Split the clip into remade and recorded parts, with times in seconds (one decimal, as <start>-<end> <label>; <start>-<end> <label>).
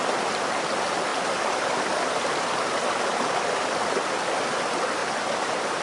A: 0.0-5.0 recorded; 5.0-5.8 remade